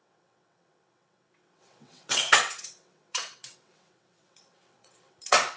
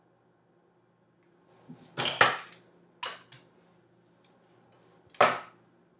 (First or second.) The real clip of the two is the second